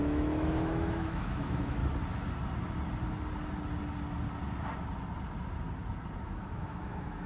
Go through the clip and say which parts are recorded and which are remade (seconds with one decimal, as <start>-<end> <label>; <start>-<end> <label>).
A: 0.0-1.8 remade; 1.8-6.2 recorded; 6.2-7.3 remade